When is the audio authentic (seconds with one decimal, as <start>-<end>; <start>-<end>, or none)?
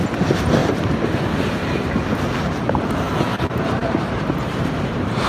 0.0-0.6; 1.9-3.3